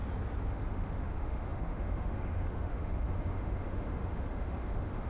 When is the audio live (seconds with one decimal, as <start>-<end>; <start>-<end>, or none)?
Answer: 0.0-0.5